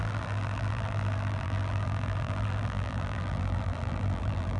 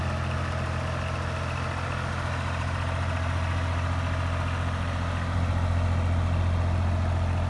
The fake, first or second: first